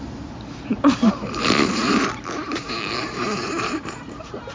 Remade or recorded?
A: remade